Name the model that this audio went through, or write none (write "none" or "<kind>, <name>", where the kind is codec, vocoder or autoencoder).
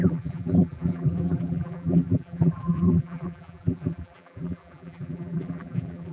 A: vocoder, BigVGAN v2